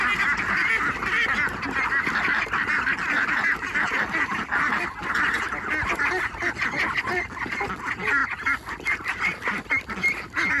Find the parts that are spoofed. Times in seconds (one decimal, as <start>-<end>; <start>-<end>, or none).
none